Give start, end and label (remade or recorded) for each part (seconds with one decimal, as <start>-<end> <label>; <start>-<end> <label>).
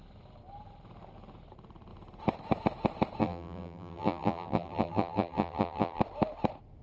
0.0-3.2 recorded; 3.2-6.0 remade; 6.0-6.8 recorded